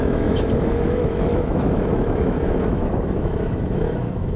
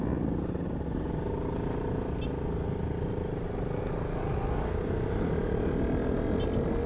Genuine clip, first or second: second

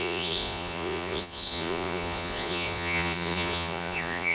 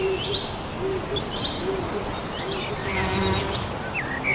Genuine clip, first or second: second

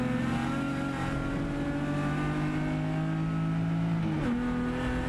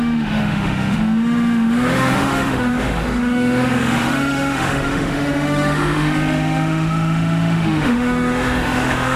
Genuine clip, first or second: first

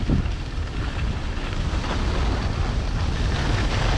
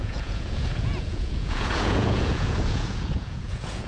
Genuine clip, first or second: first